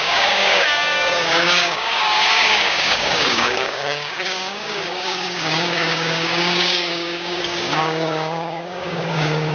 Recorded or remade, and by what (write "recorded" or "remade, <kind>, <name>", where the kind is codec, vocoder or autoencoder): remade, codec, DAC